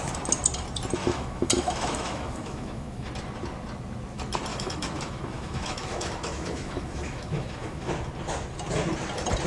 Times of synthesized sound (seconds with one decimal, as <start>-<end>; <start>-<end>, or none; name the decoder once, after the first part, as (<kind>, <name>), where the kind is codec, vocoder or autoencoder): 1.0-3.1 (autoencoder, DAC-VAE); 4.5-7.9